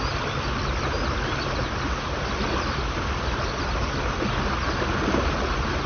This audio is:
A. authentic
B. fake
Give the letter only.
A